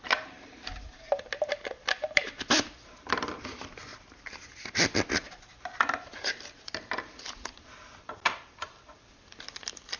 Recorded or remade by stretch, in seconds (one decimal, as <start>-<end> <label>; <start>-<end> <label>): 0.0-3.9 remade; 3.9-5.4 recorded; 5.4-10.0 remade